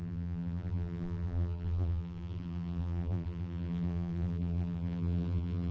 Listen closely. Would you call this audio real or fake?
fake